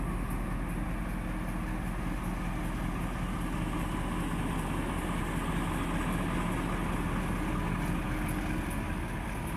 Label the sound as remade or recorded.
recorded